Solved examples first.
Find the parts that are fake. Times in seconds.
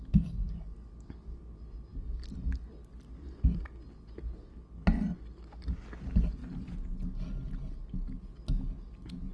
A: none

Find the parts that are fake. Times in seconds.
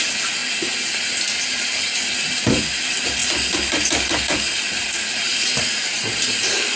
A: none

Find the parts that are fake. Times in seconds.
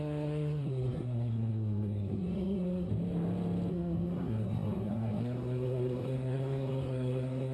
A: 0.0-2.9 (codec, SNAC); 3.7-7.5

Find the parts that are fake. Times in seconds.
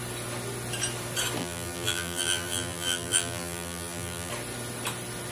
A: 1.4-4.3 (vocoder, BigVGAN v2)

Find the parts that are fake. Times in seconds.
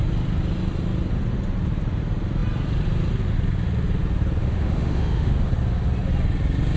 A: 4.4-5.5 (autoencoder, DAC-VAE)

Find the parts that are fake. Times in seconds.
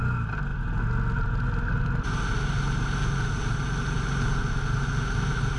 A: none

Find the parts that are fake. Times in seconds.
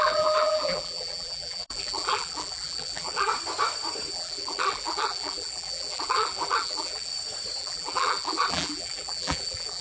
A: 0.0-3.3 (vocoder, BigVGAN v2); 4.1-7.1; 7.6-9.8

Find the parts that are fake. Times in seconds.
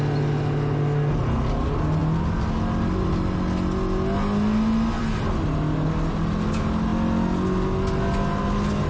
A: none